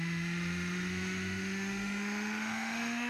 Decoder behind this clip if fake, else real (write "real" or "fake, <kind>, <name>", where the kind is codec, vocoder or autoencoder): fake, autoencoder, DAC-VAE